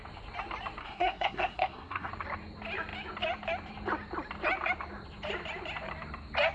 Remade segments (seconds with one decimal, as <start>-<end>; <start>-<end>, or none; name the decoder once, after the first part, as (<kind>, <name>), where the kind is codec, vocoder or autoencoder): 0.8-2.1 (codec, SNAC)